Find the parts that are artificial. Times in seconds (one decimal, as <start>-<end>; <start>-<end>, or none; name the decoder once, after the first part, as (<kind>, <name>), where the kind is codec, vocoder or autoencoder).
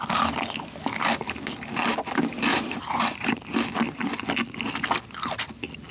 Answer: 2.5-3.5 (vocoder, BigVGAN v2)